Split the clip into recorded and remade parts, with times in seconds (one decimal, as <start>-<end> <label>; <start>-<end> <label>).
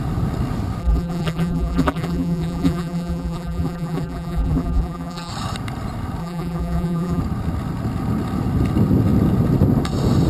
0.0-0.8 recorded; 0.8-5.3 remade; 5.3-6.2 recorded; 6.2-7.2 remade; 7.2-10.3 recorded